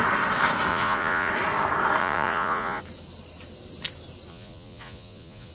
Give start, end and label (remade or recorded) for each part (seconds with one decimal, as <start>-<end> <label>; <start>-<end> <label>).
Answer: 0.0-0.7 recorded; 0.7-1.3 remade; 1.3-2.0 recorded; 2.0-2.8 remade; 2.8-4.3 recorded; 4.3-5.5 remade